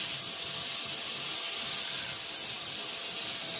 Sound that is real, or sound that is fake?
real